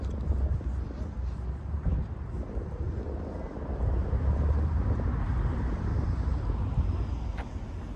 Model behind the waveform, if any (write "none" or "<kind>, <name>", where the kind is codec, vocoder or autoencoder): none